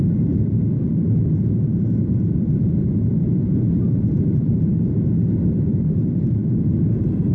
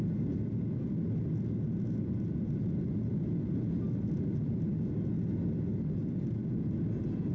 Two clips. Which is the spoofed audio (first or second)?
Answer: first